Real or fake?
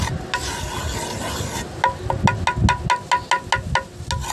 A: real